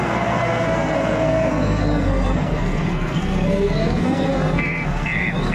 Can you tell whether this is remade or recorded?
remade